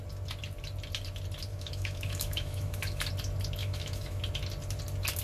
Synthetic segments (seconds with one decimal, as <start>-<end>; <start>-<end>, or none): 1.5-3.1; 3.6-4.2